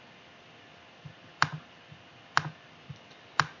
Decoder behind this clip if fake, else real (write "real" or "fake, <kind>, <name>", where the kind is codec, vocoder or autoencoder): real